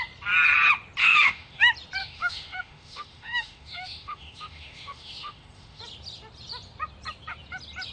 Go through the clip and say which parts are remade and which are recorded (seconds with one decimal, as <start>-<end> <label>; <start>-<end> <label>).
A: 0.0-1.0 recorded; 1.0-1.6 remade; 1.6-2.0 recorded; 2.0-5.8 remade; 5.8-7.9 recorded